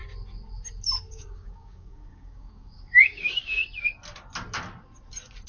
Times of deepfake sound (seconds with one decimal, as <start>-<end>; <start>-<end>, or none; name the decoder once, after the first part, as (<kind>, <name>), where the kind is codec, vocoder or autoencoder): 1.1-3.6 (codec, DAC)